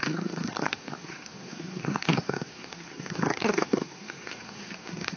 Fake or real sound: fake